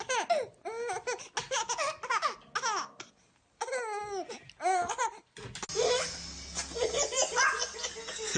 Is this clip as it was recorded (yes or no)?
yes